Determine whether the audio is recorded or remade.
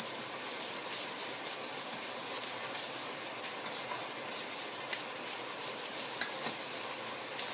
recorded